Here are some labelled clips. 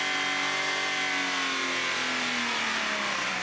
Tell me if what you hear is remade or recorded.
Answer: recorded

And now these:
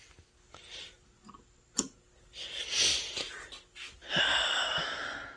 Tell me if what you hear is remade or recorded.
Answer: recorded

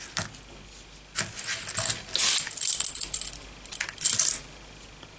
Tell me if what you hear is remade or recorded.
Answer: recorded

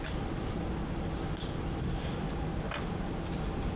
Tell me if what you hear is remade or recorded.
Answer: recorded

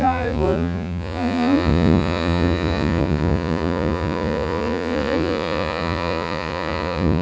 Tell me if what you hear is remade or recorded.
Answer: remade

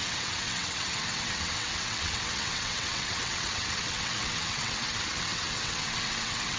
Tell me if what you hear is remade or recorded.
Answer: remade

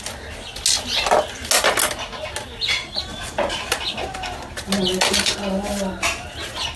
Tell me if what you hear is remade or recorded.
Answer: recorded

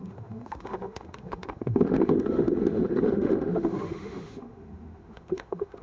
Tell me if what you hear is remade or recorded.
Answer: remade